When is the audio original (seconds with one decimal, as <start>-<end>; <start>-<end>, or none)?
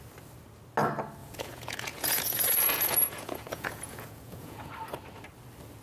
0.0-1.2; 4.7-5.8